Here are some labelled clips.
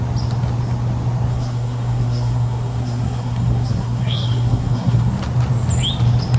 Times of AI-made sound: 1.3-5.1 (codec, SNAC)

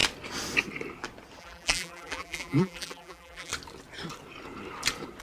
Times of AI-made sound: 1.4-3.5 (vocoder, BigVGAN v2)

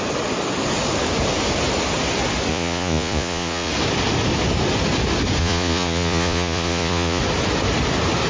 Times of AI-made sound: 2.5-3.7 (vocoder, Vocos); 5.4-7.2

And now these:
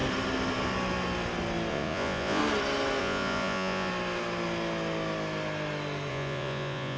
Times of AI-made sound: 1.7-2.4 (vocoder, Vocos); 3.0-3.9; 6.1-7.0